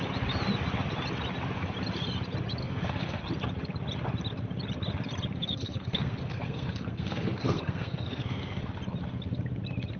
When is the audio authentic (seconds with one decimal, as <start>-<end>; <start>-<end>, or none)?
0.0-2.6; 3.2-5.4; 8.6-10.0